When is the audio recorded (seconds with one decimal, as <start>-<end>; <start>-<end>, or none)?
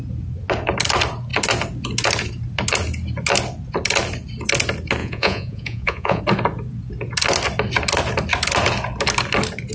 0.0-5.0; 6.2-9.7